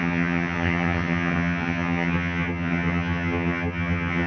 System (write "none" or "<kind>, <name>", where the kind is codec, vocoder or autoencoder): vocoder, HiFi-GAN